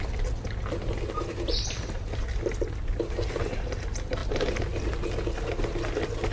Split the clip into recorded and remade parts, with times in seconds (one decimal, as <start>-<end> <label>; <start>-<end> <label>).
0.0-4.2 recorded; 4.2-5.1 remade; 5.1-6.3 recorded